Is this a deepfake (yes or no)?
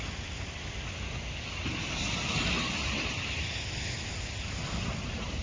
no